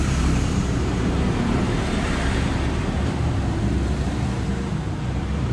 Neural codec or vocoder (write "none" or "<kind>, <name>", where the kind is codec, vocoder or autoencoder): vocoder, BigVGAN v2